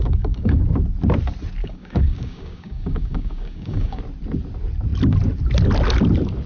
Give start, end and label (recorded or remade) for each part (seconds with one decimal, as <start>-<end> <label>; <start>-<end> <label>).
0.0-0.6 remade; 0.6-1.6 recorded; 1.6-4.0 remade; 4.0-6.5 recorded